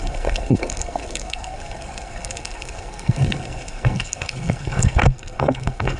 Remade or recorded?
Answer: remade